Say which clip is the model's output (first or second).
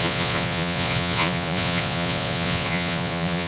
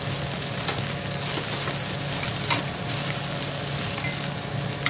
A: first